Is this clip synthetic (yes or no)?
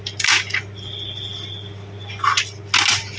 no